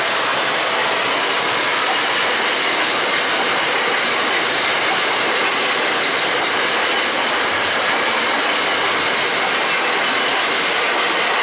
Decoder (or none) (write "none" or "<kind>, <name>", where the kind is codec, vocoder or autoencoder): none